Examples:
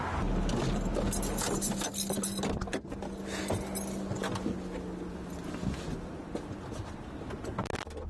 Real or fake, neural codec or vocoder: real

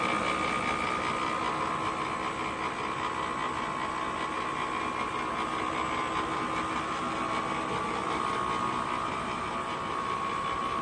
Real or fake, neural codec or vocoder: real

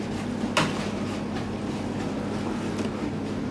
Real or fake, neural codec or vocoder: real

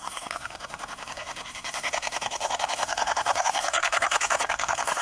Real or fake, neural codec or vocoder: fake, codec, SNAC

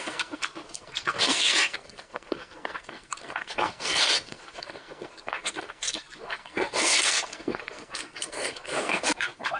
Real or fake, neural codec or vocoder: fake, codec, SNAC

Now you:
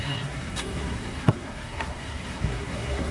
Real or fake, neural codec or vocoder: fake, codec, SNAC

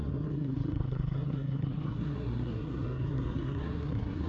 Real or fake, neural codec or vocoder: fake, codec, SNAC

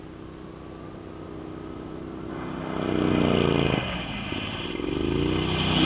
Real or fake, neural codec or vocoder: real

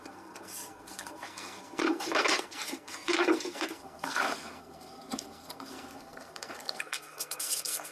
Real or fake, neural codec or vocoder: fake, codec, SNAC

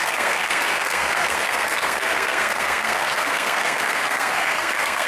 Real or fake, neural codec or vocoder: fake, codec, SNAC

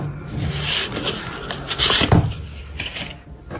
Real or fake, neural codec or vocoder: real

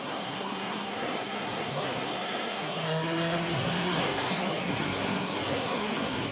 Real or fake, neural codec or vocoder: fake, codec, SNAC